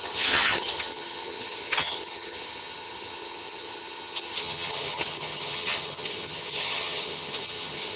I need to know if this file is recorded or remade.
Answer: remade